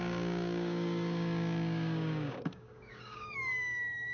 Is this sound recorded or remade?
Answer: remade